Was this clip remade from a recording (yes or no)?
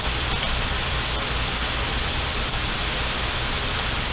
no